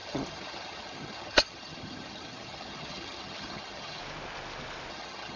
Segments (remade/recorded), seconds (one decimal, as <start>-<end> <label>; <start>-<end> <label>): 0.0-4.0 remade; 4.0-4.9 recorded; 4.9-5.4 remade